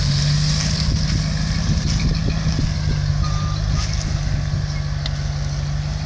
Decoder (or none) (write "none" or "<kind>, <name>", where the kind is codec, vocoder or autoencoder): none